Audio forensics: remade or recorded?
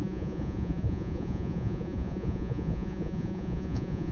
remade